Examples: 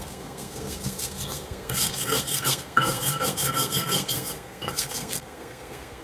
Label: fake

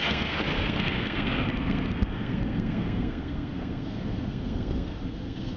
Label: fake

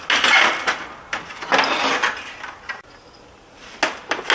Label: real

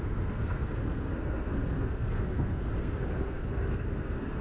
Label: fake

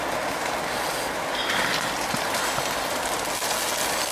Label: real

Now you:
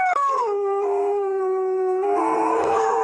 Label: fake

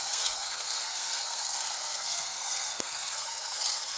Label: fake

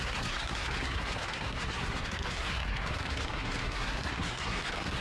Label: fake